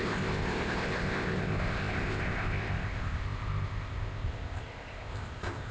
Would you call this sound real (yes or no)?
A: no